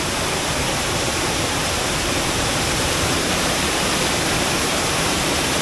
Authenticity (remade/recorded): remade